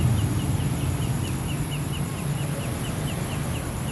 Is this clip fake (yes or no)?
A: no